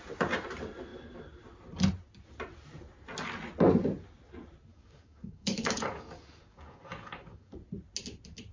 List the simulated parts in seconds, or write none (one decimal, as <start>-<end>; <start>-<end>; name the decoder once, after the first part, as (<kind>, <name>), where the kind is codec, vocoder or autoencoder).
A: 4.7-7.5 (codec, DAC)

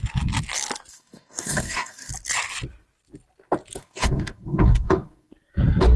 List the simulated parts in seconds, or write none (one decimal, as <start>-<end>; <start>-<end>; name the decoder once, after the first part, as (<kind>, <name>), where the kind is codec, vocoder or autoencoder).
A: 0.9-2.1 (codec, DAC); 3.8-5.3

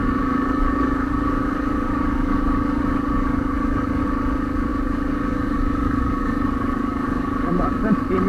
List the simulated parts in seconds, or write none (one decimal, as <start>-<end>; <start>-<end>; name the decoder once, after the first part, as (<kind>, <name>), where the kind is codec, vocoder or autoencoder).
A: 0.0-4.0 (codec, DAC); 4.7-7.8

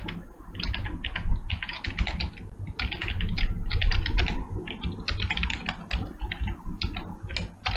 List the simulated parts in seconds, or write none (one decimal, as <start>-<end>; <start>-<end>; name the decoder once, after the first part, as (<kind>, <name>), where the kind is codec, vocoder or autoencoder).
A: none

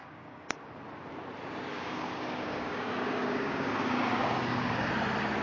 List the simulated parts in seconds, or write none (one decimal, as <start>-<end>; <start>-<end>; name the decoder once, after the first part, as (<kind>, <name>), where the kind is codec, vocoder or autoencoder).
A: 0.0-0.7 (codec, DAC); 1.7-4.9

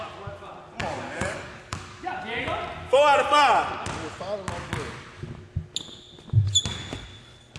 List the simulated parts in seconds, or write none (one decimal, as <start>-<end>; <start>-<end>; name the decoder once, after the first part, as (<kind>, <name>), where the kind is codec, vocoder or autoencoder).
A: 0.8-2.1 (codec, DAC)